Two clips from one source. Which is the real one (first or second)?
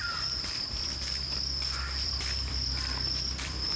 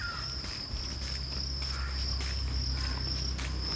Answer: second